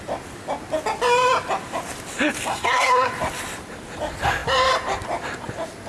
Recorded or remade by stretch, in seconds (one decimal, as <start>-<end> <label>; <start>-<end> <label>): 0.0-2.5 recorded; 2.5-3.1 remade; 3.1-5.9 recorded